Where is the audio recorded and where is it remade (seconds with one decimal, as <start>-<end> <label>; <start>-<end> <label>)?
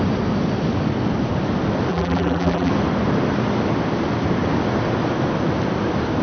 0.0-1.9 recorded; 1.9-2.7 remade; 2.7-6.2 recorded